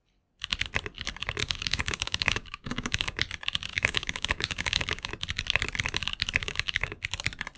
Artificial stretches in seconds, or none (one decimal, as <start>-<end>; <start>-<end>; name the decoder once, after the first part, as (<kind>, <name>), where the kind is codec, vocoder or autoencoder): 1.4-3.2 (codec, DAC); 3.7-5.1; 6.4-7.0